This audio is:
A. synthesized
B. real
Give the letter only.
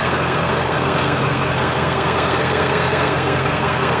A